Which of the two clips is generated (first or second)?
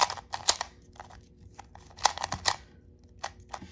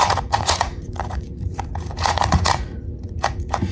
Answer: second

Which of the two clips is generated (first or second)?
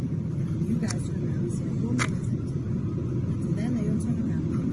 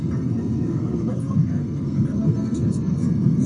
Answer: second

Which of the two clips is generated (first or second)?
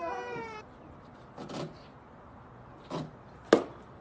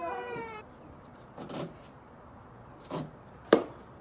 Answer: second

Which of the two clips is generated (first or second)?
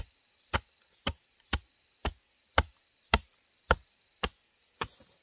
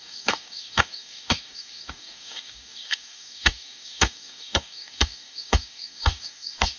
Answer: second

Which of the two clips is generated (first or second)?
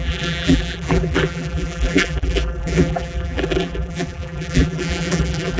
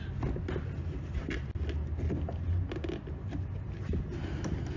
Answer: first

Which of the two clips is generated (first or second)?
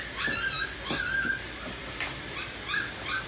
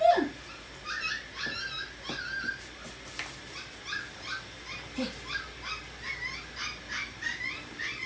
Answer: first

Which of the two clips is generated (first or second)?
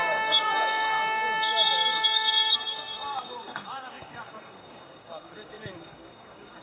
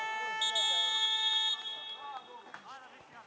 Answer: first